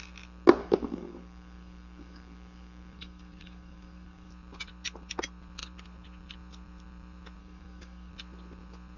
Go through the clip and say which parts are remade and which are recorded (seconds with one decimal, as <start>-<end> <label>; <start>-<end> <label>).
0.0-0.6 recorded; 0.6-4.3 remade; 4.3-7.4 recorded; 7.4-8.1 remade; 8.1-9.0 recorded